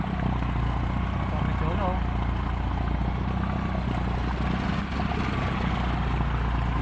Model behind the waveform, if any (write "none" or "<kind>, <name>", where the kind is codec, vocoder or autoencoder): none